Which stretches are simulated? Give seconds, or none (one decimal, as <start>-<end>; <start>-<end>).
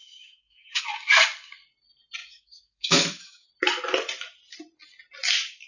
0.0-0.8; 2.2-3.5